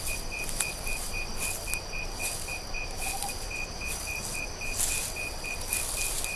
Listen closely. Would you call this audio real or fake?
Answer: real